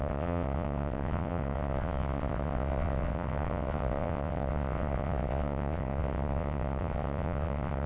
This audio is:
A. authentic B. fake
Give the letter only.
B